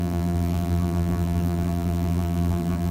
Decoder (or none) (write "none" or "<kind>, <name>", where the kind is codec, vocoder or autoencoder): vocoder, BigVGAN v2